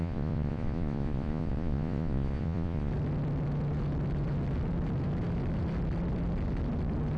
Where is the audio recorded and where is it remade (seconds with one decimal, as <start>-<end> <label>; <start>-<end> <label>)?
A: 0.0-2.9 remade; 2.9-7.2 recorded